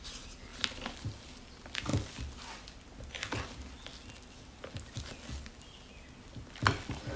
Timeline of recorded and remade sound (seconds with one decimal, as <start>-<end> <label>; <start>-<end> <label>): 0.0-7.2 recorded